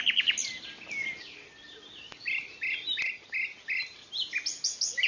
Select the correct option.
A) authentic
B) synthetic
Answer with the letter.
A